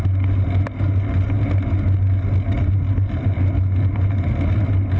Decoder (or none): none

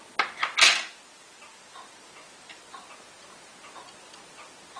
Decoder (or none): none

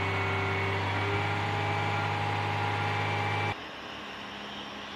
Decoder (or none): none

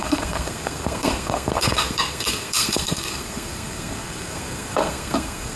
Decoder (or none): codec, SNAC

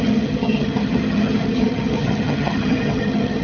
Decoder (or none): vocoder, HiFi-GAN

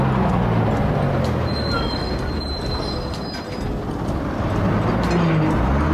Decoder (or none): none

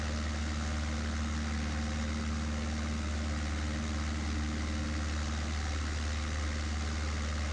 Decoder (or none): none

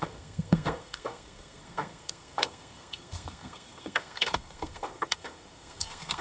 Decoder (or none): codec, SNAC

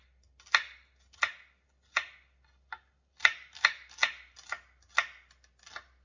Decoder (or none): none